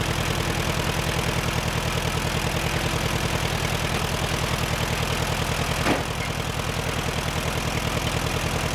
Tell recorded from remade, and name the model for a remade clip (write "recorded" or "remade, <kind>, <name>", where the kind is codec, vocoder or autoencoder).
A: recorded